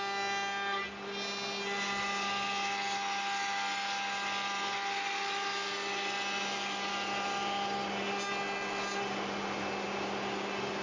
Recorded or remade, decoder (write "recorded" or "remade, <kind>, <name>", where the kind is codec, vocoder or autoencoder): recorded